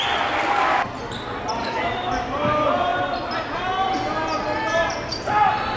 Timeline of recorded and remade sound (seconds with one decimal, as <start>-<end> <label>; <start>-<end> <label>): 0.0-1.6 recorded; 1.6-2.1 remade; 2.1-5.8 recorded